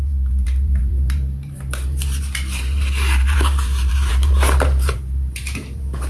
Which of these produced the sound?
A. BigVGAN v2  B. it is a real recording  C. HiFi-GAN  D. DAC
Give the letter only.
A